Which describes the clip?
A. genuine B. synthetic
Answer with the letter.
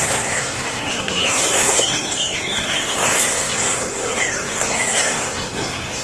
B